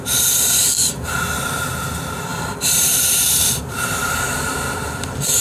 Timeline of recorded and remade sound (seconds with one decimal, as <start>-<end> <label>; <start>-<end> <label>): 0.0-5.4 remade